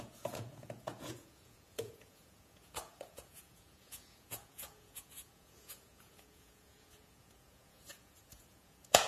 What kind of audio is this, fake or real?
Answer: fake